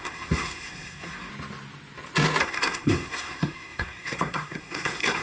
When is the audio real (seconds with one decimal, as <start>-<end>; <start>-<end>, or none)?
1.3-2.4